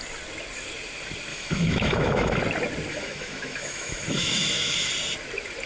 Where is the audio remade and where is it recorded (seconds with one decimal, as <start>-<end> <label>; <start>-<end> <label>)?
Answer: 0.0-1.3 recorded; 1.3-2.4 remade; 2.4-2.9 recorded; 2.9-4.9 remade; 4.9-5.7 recorded